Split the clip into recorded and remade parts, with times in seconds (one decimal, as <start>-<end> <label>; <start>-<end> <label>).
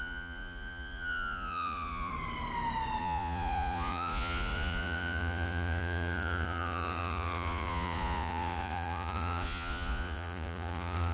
0.0-2.1 remade; 2.1-3.0 recorded; 3.0-11.1 remade